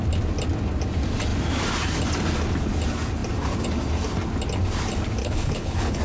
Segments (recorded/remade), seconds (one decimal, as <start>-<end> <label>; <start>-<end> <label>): 0.0-5.2 recorded; 5.2-6.0 remade